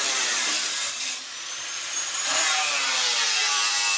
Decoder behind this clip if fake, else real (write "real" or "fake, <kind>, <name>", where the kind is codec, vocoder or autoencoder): fake, vocoder, BigVGAN v2